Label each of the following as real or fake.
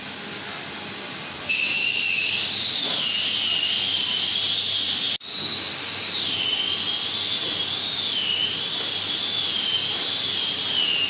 real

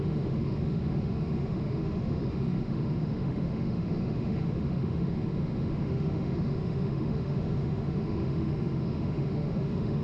fake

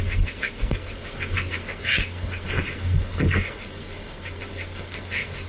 fake